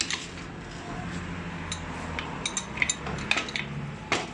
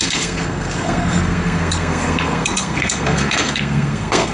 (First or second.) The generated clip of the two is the second